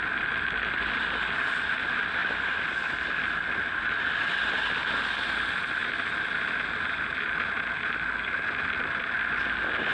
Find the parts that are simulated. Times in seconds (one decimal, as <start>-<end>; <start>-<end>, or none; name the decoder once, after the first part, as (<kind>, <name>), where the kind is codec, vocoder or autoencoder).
none